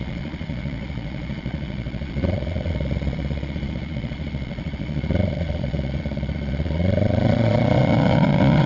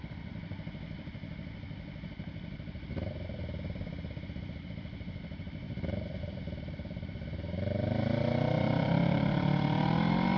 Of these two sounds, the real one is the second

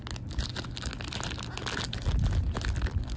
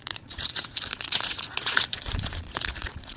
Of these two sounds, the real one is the first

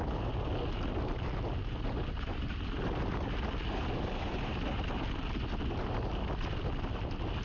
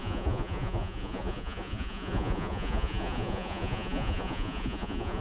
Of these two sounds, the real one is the first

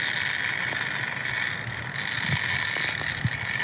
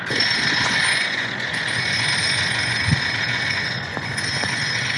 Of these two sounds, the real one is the first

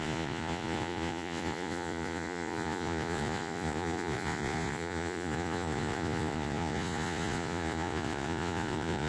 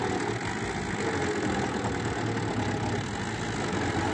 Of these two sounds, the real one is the second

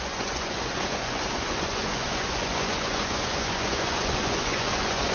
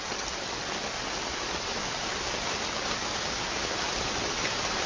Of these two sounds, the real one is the second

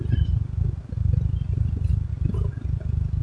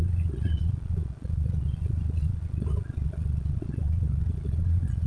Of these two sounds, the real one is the first